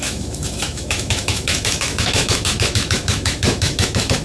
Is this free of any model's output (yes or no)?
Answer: no